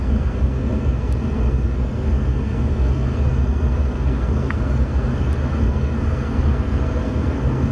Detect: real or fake fake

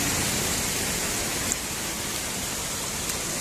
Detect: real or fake real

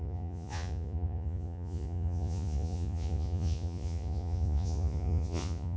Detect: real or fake fake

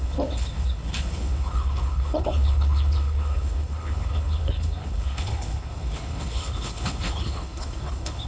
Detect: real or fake fake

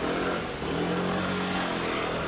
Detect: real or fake real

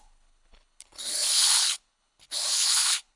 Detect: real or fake fake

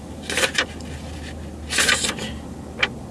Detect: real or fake real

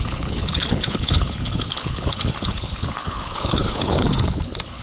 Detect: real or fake fake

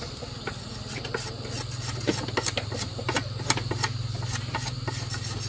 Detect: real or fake real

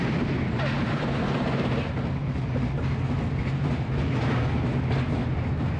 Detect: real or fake real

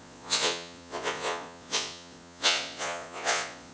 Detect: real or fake fake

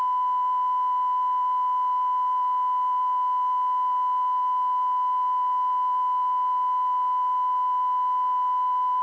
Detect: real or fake real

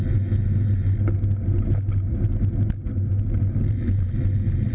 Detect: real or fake real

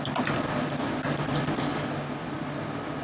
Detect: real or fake real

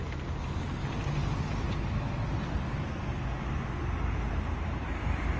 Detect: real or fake real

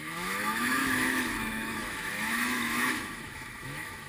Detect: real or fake fake